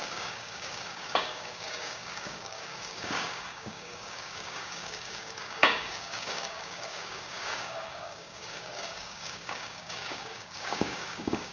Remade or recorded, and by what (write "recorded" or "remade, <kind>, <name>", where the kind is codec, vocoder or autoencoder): remade, codec, DAC